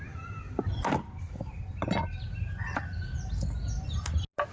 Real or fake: real